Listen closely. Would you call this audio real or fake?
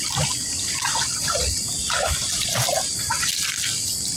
fake